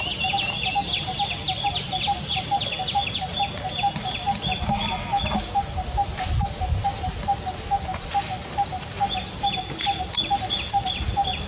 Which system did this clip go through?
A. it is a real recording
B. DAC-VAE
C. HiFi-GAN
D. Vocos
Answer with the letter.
A